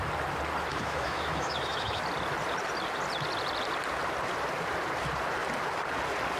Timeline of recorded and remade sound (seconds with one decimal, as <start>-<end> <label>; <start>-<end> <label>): 0.0-0.7 recorded; 0.7-2.0 remade; 2.0-6.4 recorded